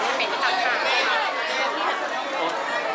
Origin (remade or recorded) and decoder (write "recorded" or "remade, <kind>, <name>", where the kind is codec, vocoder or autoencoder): recorded